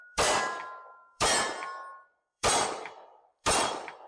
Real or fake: fake